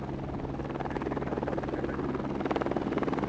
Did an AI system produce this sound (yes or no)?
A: no